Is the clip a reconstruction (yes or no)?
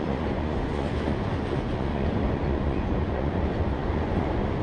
yes